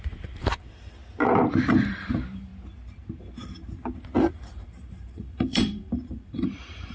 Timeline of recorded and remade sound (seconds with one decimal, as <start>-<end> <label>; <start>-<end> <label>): 0.0-1.0 remade; 1.0-1.9 recorded; 1.9-2.5 remade; 2.5-4.3 recorded; 4.3-6.9 remade